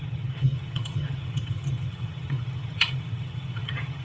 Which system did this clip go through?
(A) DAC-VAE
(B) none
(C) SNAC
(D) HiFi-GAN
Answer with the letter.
D